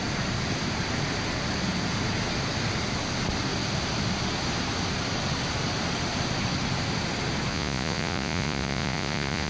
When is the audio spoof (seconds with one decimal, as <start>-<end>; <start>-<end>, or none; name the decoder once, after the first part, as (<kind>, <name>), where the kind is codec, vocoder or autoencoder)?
7.5-9.5 (vocoder, Vocos)